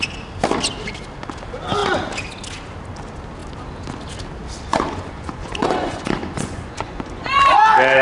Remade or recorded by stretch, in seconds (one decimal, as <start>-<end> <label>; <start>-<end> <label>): 0.0-4.7 recorded; 4.7-7.4 remade; 7.4-8.0 recorded